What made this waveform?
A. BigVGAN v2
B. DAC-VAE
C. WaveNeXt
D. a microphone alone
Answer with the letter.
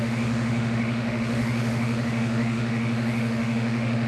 B